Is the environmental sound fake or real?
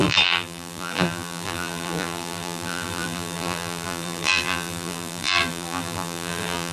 fake